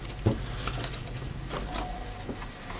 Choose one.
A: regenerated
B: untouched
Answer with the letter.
B